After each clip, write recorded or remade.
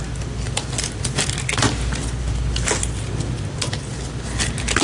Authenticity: recorded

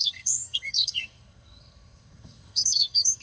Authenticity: remade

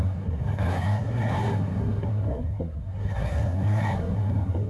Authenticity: remade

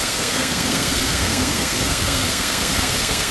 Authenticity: remade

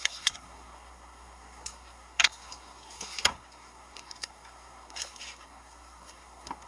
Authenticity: remade